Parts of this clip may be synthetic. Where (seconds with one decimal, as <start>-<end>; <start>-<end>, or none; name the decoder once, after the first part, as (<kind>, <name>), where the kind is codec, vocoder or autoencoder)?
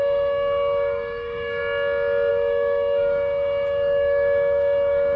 0.0-1.6 (autoencoder, DAC-VAE); 2.3-5.2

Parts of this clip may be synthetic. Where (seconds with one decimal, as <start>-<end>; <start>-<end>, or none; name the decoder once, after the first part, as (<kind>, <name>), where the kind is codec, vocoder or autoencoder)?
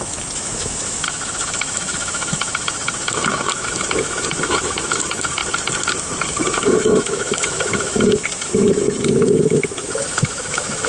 0.0-5.4 (autoencoder, DAC-VAE); 6.4-10.9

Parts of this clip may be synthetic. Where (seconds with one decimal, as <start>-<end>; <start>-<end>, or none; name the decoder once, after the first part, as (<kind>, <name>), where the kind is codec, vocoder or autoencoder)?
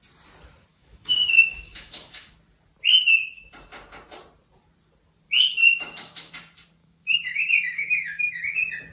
0.7-2.4 (autoencoder, DAC-VAE); 5.5-6.3; 6.8-8.4